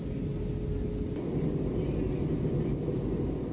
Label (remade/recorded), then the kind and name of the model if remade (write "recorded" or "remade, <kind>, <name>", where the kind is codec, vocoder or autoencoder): recorded